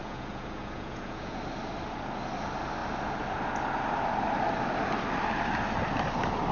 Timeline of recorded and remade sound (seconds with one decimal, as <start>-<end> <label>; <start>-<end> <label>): 0.0-1.4 remade; 1.4-6.5 recorded